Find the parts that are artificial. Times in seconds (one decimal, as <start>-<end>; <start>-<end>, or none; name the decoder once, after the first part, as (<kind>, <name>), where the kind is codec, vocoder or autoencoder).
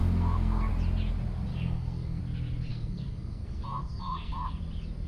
0.0-0.7 (codec, SNAC); 1.5-2.2; 2.7-4.6